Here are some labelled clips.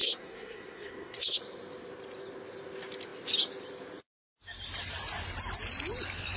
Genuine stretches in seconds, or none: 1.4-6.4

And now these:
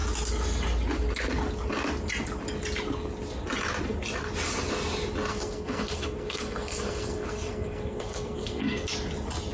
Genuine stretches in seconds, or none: 0.0-5.3; 8.9-9.5

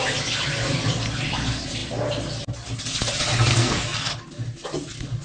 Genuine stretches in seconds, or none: 0.0-3.5; 4.1-5.2